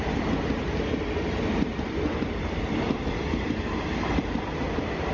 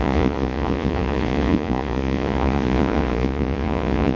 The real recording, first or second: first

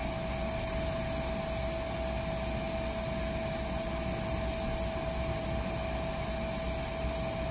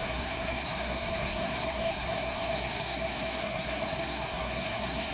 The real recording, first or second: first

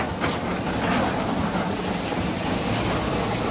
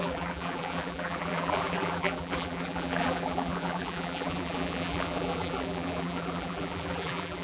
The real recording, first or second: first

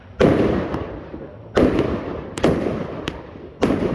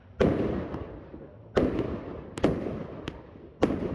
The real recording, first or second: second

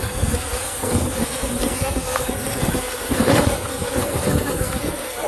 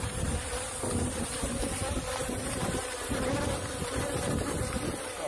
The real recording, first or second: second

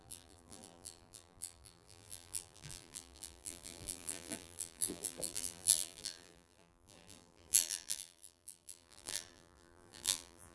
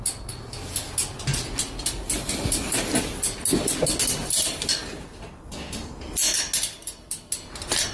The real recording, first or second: second